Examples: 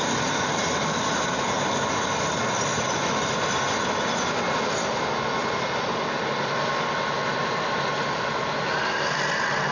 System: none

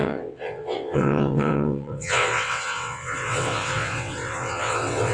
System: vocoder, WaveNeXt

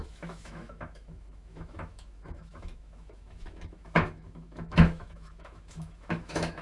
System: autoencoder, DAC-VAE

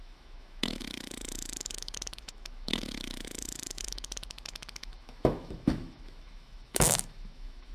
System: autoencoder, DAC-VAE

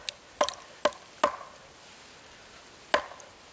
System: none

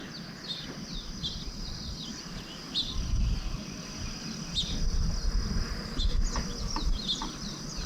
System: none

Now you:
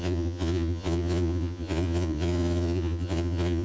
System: vocoder, Vocos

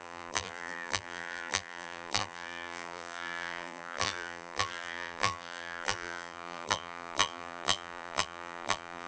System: vocoder, BigVGAN v2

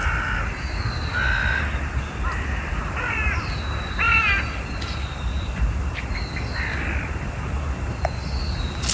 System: none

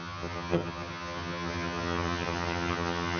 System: vocoder, HiFi-GAN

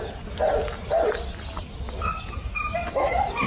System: none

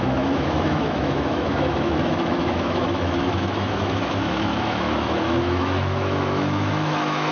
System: autoencoder, DAC-VAE